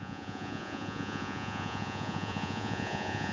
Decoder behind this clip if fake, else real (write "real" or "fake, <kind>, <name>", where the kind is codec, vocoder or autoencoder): fake, vocoder, Vocos